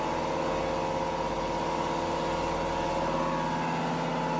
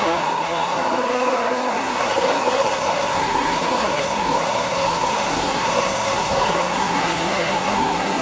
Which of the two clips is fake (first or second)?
second